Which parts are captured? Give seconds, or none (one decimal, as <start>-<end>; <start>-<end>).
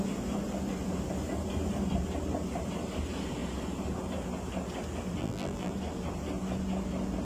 0.0-5.2; 5.7-7.2